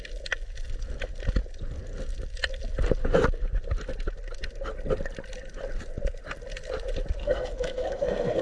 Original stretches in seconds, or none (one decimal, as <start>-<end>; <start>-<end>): 0.0-7.2